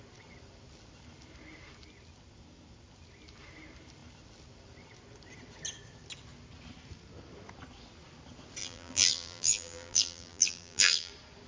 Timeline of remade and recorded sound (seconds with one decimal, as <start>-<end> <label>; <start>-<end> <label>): 0.0-8.6 recorded; 8.6-11.1 remade; 11.1-11.5 recorded